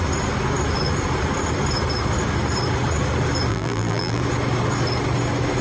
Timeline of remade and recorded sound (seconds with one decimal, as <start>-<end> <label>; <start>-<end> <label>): 0.0-3.5 recorded; 3.5-4.2 remade; 4.2-5.6 recorded